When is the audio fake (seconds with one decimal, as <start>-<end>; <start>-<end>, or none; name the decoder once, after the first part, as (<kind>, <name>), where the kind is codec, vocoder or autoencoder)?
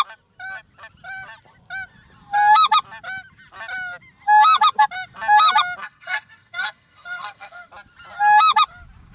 5.8-7.7 (codec, SNAC)